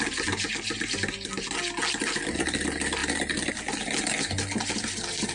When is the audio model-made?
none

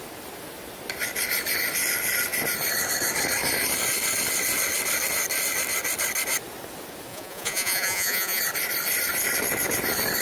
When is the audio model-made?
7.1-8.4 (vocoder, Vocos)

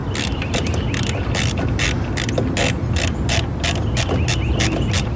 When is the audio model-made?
none

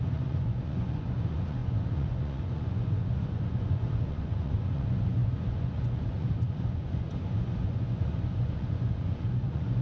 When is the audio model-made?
0.0-9.8 (vocoder, Vocos)

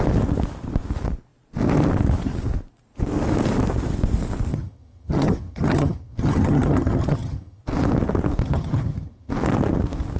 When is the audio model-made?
4.5-7.6 (vocoder, HiFi-GAN); 8.4-9.3

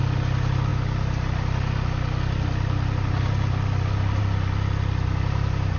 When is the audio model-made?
none

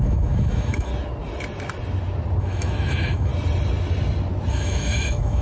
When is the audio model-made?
0.0-0.9 (autoencoder, DAC-VAE); 2.4-3.3; 4.5-5.4